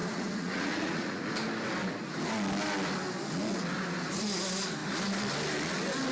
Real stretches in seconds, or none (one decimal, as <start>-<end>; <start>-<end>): 1.2-6.1